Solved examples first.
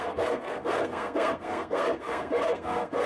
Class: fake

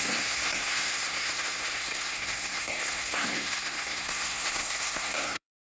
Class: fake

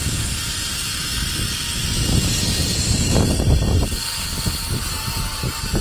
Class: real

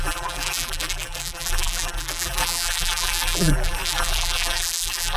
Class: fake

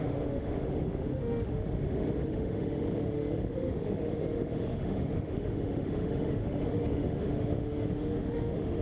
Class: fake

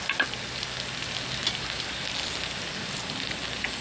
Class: real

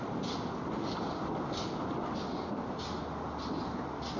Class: real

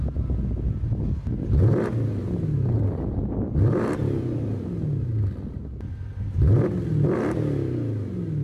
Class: real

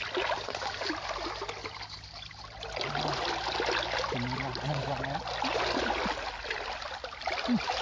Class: real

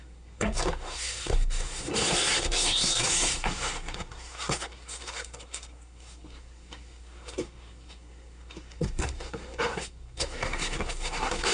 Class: fake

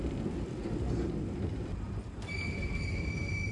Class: real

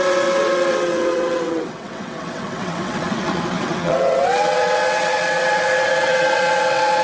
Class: fake